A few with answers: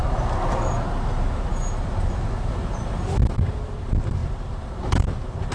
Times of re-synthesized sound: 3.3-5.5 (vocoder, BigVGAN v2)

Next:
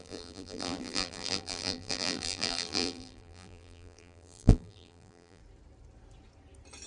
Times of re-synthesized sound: 0.0-5.4 (vocoder, BigVGAN v2)

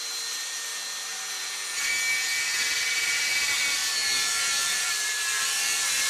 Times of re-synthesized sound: 0.0-0.7 (vocoder, BigVGAN v2); 2.3-6.1

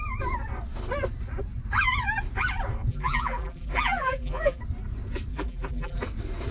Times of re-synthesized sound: 2.9-4.6 (vocoder, BigVGAN v2); 5.3-6.0

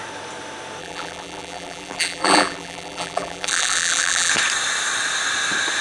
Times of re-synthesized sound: 0.8-4.3 (vocoder, BigVGAN v2)